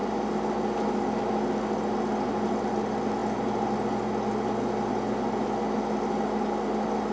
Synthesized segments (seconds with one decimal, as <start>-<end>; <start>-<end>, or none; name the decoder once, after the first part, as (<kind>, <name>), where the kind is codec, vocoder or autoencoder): none